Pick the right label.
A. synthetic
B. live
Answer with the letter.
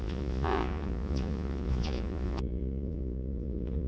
A